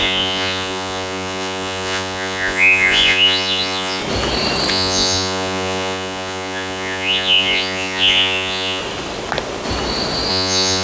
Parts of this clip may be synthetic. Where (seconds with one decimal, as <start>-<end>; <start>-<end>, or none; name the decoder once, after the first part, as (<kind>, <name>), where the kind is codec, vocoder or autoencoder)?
0.0-4.0 (vocoder, Vocos); 4.7-8.8; 10.3-10.8